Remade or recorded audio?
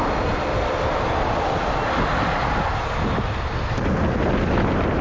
recorded